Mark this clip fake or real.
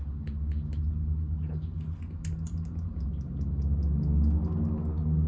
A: real